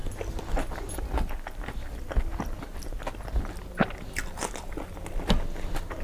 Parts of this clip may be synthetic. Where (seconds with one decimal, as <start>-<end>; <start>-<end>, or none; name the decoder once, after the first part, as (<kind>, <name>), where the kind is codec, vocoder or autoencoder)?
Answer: none